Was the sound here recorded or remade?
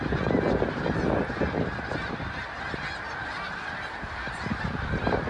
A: remade